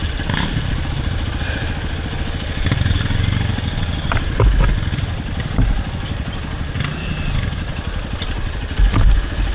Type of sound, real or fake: real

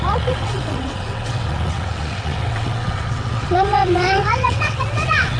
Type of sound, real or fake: fake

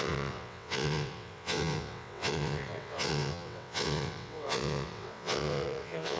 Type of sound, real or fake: fake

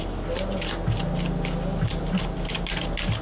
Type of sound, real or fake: real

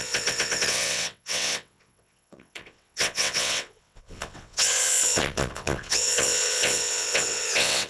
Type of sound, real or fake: fake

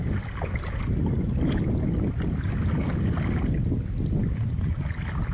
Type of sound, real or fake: real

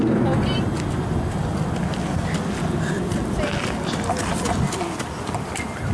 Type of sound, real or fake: real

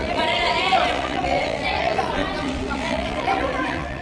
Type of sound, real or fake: fake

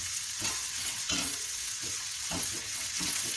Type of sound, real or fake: fake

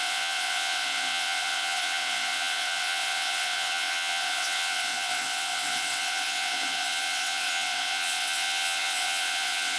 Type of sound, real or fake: fake